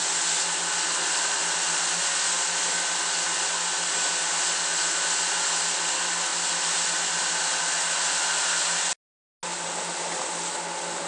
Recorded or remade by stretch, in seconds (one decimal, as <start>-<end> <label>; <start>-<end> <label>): 0.0-11.1 recorded